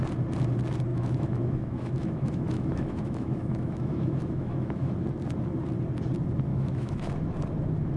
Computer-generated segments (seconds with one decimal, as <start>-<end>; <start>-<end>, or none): 0.9-4.9; 6.5-7.1